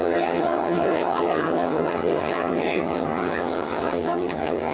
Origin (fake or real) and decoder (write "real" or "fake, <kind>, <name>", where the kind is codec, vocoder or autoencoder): fake, vocoder, HiFi-GAN